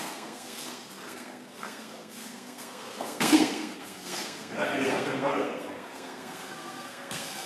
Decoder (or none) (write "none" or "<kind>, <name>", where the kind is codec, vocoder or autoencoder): codec, SNAC